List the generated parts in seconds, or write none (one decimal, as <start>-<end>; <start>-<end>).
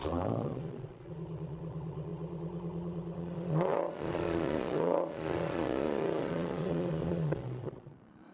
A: 0.0-8.3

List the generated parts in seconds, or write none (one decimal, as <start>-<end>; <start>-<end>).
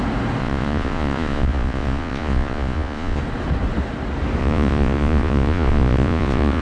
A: 0.4-3.2; 4.4-6.6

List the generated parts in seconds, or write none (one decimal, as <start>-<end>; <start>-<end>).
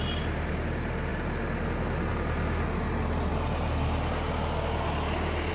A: none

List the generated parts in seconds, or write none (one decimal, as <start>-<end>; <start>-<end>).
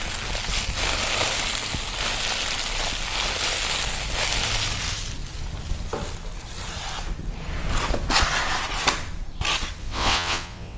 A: 9.8-10.8